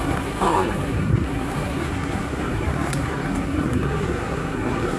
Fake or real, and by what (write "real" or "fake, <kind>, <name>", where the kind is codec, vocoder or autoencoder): fake, codec, SNAC